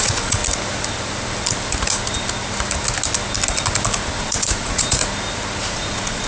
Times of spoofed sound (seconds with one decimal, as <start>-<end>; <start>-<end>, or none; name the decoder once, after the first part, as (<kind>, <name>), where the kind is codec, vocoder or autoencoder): 0.0-0.4 (vocoder, Vocos); 4.2-5.0; 5.7-6.3